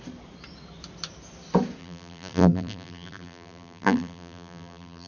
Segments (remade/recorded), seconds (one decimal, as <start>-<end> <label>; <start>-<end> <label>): 0.0-1.8 recorded; 1.8-5.1 remade